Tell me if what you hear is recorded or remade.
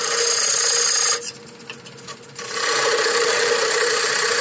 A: recorded